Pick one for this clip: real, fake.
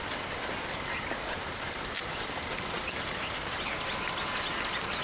real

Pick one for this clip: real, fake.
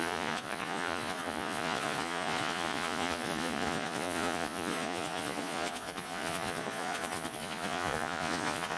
fake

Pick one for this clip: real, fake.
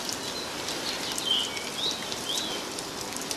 real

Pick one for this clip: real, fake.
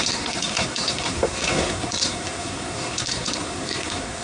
fake